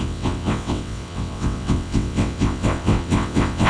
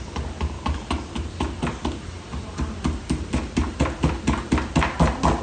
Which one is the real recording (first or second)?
second